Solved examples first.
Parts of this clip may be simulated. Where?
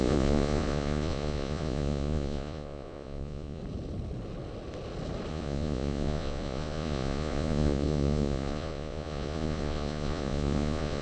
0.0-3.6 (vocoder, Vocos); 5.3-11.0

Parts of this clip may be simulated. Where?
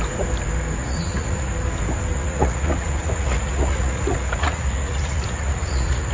0.8-1.5 (vocoder, Vocos); 2.1-6.1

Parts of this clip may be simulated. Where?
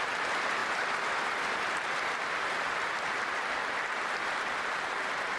none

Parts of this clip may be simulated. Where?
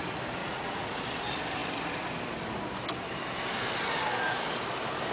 0.4-1.0 (vocoder, Vocos)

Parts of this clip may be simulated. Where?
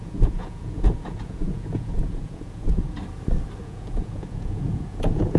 0.0-3.0 (vocoder, Vocos); 3.6-5.4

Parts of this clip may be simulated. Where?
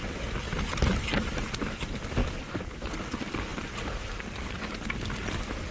none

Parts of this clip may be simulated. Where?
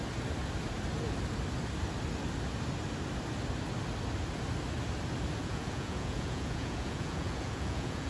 5.4-8.1 (vocoder, Vocos)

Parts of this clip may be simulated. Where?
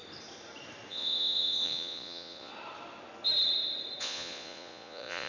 0.9-2.5 (vocoder, Vocos); 4.0-5.3